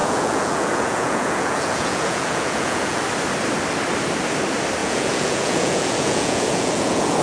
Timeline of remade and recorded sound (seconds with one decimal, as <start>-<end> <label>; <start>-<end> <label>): 0.0-3.0 remade; 3.0-4.8 recorded; 4.8-7.2 remade